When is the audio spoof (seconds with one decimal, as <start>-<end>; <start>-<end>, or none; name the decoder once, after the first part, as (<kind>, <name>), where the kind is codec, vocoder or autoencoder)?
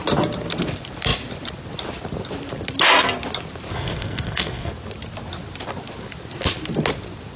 3.7-4.7 (codec, SNAC)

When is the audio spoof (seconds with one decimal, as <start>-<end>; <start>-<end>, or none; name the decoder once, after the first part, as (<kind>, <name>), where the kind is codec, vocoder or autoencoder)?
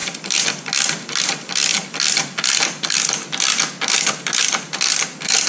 none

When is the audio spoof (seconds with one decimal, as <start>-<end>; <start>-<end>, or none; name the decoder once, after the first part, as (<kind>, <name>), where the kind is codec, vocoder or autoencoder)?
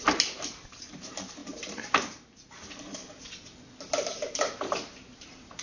0.0-3.0 (vocoder, BigVGAN v2); 3.8-5.6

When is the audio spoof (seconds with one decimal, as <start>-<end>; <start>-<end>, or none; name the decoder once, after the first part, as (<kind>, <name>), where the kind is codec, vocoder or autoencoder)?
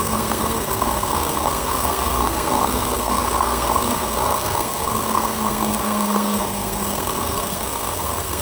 0.0-8.4 (codec, SNAC)